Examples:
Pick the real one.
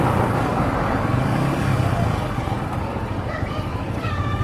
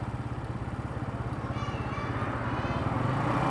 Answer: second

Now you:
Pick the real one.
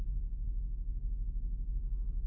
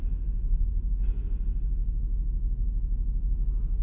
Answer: second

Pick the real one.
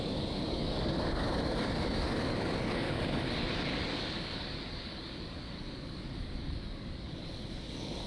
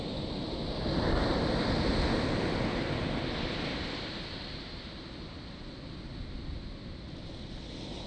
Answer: second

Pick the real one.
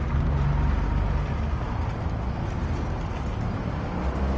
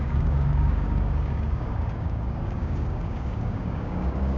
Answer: first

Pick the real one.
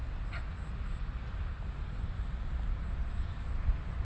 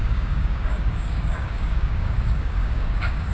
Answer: first